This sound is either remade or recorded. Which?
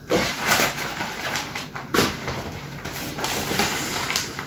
remade